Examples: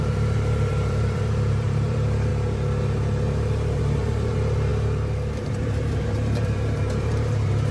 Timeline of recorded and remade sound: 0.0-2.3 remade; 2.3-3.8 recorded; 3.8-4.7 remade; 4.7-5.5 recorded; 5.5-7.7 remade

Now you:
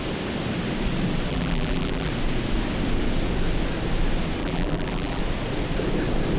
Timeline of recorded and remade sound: 0.0-1.3 recorded; 1.3-2.1 remade; 2.1-4.4 recorded; 4.4-5.2 remade; 5.2-6.4 recorded